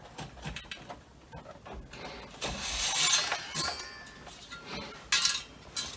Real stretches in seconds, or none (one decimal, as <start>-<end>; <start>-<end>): 0.0-6.0